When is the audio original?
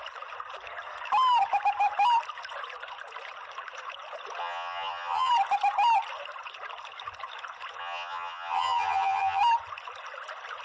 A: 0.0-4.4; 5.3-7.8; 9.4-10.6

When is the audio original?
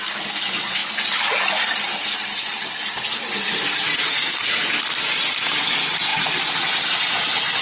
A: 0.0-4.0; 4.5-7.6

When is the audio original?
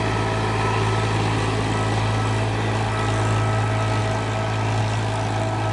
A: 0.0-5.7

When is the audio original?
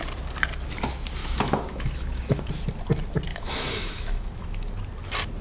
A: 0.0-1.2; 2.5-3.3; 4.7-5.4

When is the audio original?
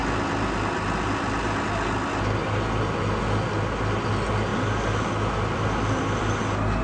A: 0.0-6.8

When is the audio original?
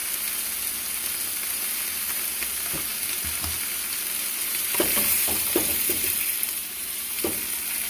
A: 0.0-4.5; 6.1-6.6; 7.1-7.9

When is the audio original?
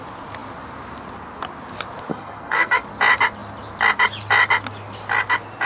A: 0.0-2.1; 2.8-5.7